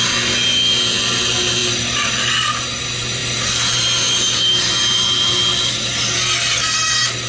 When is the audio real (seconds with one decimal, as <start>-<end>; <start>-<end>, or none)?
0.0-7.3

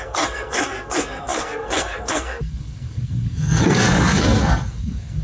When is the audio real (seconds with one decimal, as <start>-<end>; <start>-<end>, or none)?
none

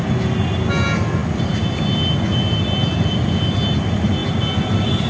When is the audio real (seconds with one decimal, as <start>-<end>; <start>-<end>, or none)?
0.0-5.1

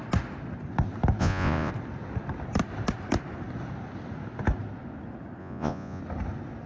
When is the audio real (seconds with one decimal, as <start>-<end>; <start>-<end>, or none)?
0.0-1.2; 1.7-5.4; 6.0-6.7